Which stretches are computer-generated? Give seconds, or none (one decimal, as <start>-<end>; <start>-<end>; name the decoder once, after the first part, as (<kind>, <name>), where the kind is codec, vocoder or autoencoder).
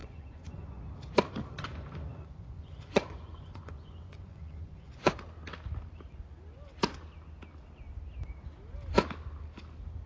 0.0-0.8 (vocoder, Vocos); 1.4-5.1